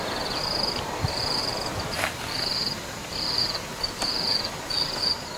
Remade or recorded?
recorded